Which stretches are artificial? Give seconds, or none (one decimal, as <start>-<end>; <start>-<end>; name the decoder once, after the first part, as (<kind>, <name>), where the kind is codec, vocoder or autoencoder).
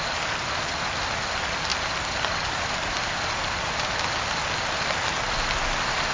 none